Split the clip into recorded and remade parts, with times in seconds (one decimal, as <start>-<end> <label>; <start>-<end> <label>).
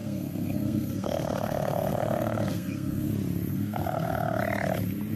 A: 0.0-3.1 remade; 3.1-3.5 recorded; 3.5-4.4 remade; 4.4-5.2 recorded